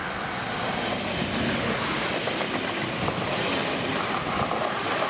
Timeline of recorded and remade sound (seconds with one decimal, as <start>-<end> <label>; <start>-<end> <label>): 0.0-5.1 recorded